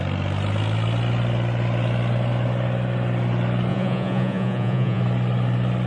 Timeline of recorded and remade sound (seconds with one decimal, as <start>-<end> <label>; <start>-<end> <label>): 0.0-3.7 recorded; 3.7-5.0 remade; 5.0-5.9 recorded